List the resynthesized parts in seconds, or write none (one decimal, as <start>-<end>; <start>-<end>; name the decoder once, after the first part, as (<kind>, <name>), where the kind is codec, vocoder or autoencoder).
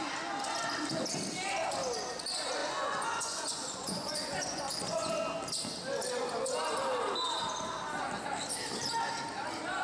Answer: 2.6-5.1 (vocoder, Vocos)